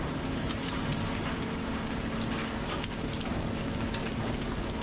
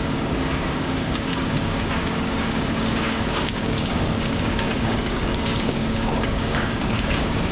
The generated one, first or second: second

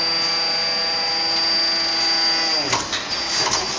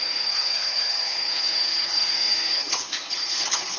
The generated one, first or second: second